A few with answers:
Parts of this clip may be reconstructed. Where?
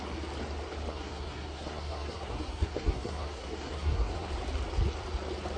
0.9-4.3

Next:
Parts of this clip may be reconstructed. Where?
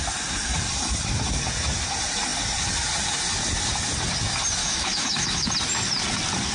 4.6-5.5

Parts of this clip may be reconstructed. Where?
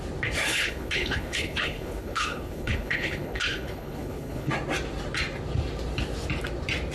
0.5-4.5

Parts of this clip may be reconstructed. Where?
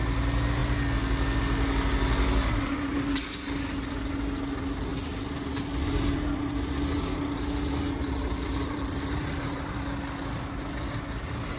8.0-9.8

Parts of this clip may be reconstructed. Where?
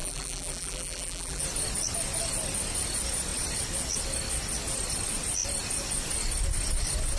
0.0-1.4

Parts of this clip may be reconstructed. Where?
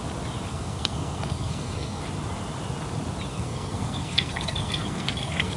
0.5-2.0; 3.3-5.6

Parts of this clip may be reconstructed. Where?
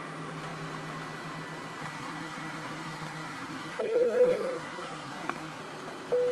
1.8-5.6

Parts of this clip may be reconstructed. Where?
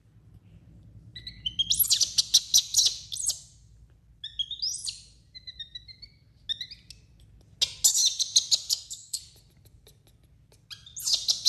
8.7-9.2